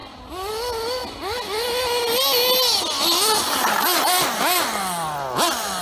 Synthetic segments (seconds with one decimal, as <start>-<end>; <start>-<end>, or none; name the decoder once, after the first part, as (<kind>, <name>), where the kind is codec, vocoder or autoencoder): 0.0-0.5 (vocoder, BigVGAN v2)